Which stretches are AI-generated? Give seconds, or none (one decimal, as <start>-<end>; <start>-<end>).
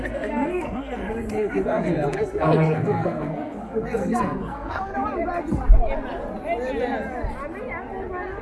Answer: 0.0-4.9